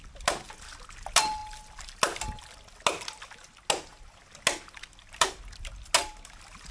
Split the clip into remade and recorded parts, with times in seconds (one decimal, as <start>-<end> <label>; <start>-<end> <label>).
0.0-6.7 recorded

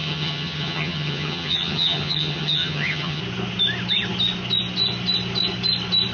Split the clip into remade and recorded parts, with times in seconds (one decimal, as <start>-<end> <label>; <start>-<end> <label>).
0.0-3.2 remade; 3.2-6.1 recorded

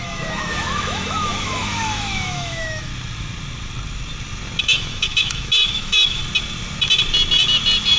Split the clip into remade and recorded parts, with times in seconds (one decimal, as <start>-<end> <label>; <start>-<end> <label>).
0.0-2.9 remade; 2.9-4.6 recorded; 4.6-6.2 remade; 6.2-8.0 recorded

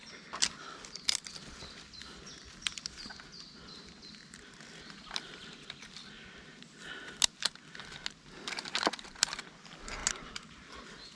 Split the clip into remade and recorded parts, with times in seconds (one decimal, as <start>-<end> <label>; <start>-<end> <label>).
0.0-11.2 recorded